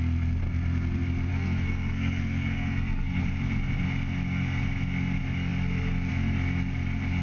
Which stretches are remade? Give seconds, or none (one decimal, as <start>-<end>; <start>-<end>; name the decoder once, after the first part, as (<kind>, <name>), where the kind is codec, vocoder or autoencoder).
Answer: 1.3-3.2 (codec, SNAC)

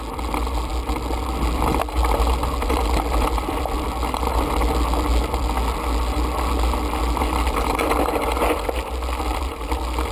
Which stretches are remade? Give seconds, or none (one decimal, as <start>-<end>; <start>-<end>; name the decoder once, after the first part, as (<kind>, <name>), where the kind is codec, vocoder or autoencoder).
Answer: none

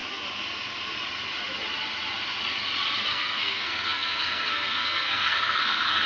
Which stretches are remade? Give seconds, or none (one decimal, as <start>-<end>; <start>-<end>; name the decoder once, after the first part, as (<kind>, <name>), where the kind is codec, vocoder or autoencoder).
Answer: 3.1-6.1 (codec, SNAC)

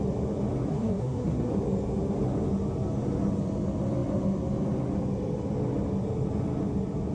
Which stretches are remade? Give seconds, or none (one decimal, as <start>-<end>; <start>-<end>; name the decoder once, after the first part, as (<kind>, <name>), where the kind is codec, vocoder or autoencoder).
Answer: 0.7-1.5 (codec, SNAC)